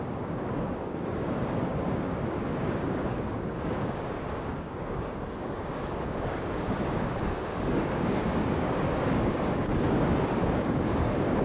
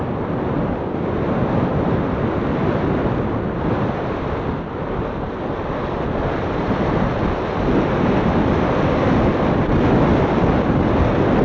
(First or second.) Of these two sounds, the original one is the second